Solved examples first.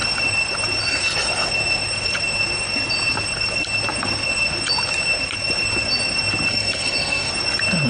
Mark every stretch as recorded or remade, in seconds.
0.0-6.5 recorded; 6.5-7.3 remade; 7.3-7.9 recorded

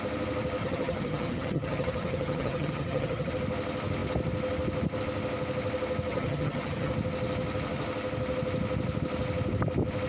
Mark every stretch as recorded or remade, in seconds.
0.0-0.6 recorded; 0.6-3.3 remade; 3.3-6.1 recorded; 6.1-6.9 remade; 6.9-10.1 recorded

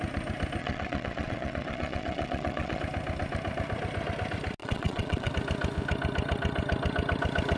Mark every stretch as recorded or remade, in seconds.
0.0-0.6 recorded; 0.6-2.8 remade; 2.8-4.6 recorded; 4.6-5.3 remade; 5.3-7.6 recorded